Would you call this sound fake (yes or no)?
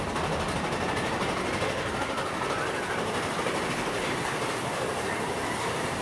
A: yes